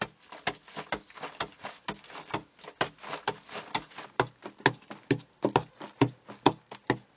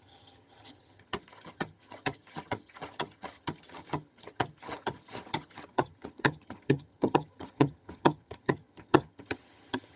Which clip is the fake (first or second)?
second